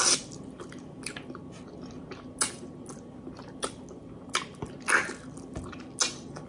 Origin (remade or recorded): recorded